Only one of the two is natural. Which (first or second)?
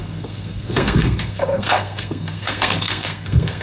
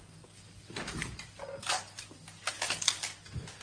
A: second